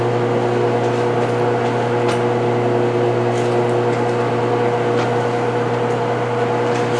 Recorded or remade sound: recorded